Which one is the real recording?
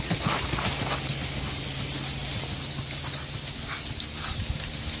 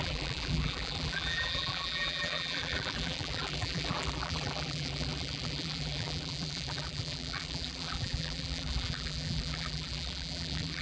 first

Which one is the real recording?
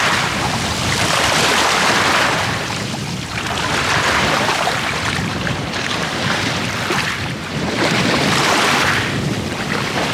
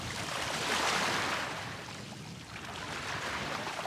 second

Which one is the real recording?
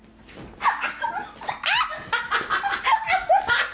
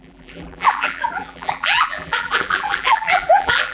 first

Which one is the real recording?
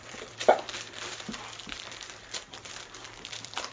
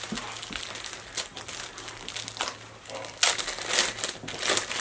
second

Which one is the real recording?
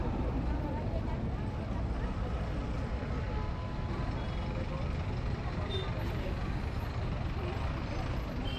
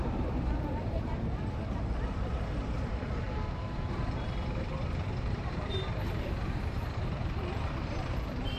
first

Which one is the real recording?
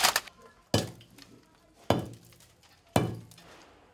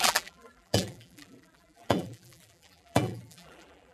first